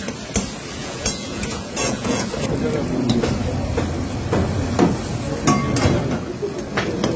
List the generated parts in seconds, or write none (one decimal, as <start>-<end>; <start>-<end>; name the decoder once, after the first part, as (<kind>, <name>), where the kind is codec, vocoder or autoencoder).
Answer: 0.8-2.3 (vocoder, Vocos)